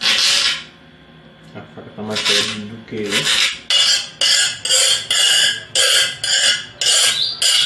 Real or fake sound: real